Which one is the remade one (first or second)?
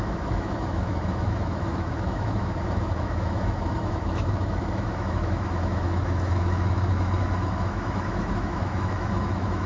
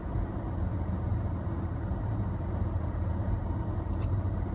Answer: first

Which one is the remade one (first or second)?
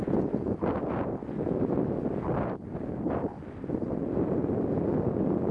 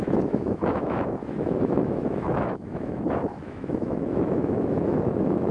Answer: second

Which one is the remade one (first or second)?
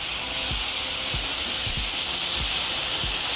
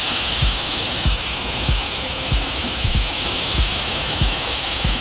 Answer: second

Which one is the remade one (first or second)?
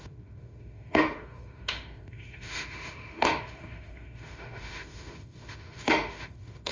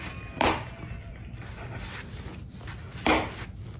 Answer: first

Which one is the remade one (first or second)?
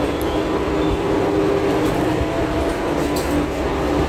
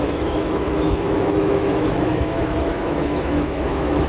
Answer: second